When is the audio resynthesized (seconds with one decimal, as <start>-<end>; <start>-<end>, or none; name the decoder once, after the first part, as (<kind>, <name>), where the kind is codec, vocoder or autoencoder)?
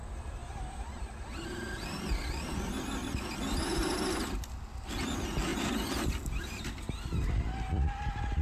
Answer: none